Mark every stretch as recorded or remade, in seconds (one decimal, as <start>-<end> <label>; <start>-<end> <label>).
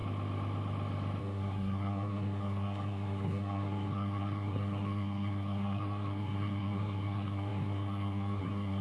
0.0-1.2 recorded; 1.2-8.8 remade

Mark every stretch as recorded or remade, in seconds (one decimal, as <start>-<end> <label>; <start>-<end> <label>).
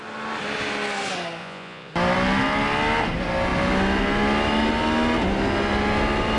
0.0-1.4 recorded; 1.4-1.9 remade; 1.9-6.4 recorded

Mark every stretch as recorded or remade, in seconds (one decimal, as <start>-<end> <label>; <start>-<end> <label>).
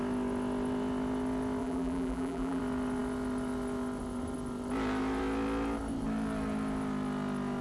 0.0-1.6 recorded; 1.6-2.6 remade; 2.6-7.6 recorded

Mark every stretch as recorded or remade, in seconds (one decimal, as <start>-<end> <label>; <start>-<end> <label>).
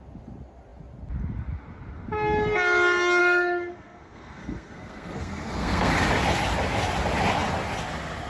0.0-3.2 recorded; 3.2-5.9 remade; 5.9-8.3 recorded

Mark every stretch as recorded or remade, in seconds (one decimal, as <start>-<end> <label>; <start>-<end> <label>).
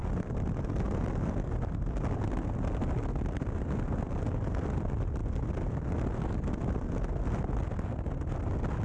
0.0-1.9 remade; 1.9-8.8 recorded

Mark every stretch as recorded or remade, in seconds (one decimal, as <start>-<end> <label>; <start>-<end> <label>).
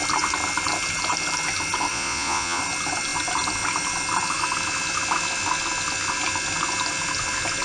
0.0-1.9 recorded; 1.9-2.6 remade; 2.6-7.6 recorded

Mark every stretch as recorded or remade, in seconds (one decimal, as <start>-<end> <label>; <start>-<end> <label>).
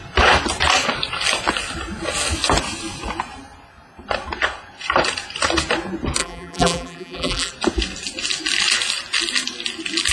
0.0-6.2 recorded; 6.2-7.5 remade; 7.5-10.1 recorded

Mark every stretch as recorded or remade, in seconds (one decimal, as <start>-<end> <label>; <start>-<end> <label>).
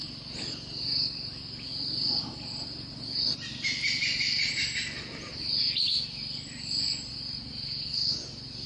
0.0-8.7 recorded